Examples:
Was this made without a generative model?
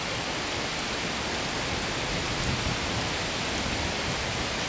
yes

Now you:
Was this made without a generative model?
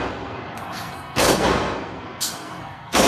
no